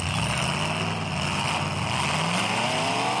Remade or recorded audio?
recorded